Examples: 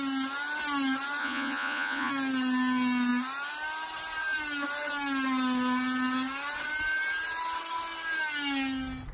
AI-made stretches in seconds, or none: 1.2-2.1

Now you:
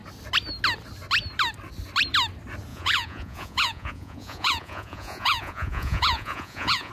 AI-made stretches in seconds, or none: 2.7-6.9

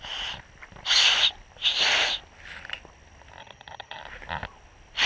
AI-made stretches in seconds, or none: 3.4-4.0

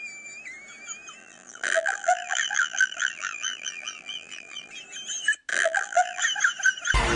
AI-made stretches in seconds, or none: 1.2-4.7; 5.5-6.2

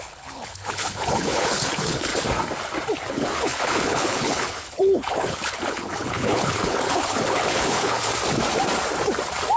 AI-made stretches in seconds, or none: 0.0-2.1; 3.1-8.1